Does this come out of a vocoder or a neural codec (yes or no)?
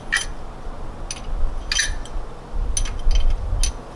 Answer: no